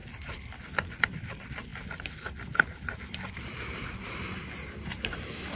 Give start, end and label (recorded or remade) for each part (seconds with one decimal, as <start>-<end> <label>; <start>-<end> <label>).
0.0-1.0 recorded; 1.0-1.7 remade; 1.7-5.0 recorded; 5.0-5.5 remade